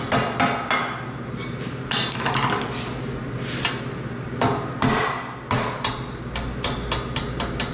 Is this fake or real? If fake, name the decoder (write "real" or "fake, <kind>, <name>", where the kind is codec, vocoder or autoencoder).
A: real